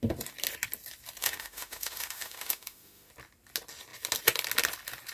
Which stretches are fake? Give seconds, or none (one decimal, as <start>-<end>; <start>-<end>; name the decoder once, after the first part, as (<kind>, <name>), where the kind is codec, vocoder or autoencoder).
1.2-3.1 (autoencoder, DAC-VAE)